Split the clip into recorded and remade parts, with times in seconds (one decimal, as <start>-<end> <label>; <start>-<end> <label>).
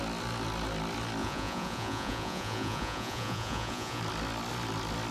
0.0-1.2 recorded; 1.2-4.0 remade; 4.0-5.1 recorded